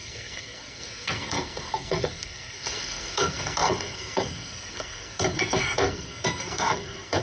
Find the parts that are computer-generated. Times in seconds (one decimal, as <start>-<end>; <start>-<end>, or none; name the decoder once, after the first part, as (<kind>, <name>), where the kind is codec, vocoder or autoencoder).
0.0-7.2 (codec, SNAC)